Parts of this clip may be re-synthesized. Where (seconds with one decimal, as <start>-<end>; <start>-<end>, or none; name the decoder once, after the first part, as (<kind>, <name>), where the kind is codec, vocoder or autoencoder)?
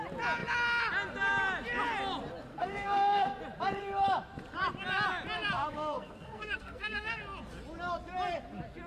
2.5-3.4 (codec, SNAC); 5.5-7.2